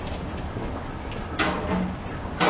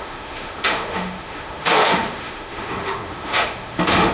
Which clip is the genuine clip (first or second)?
first